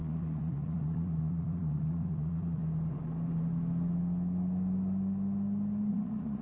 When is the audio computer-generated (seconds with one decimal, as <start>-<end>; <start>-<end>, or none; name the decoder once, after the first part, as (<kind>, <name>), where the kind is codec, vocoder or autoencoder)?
0.0-2.6 (vocoder, Vocos); 5.9-6.4